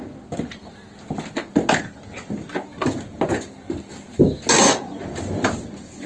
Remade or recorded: recorded